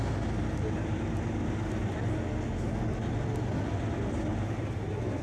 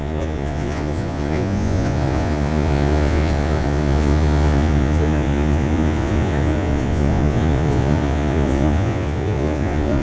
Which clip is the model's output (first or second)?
second